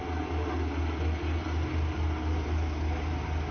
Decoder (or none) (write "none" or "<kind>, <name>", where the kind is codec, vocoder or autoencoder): none